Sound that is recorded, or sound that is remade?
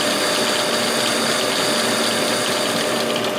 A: recorded